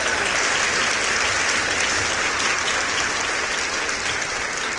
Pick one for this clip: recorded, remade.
recorded